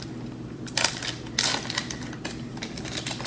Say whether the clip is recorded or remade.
recorded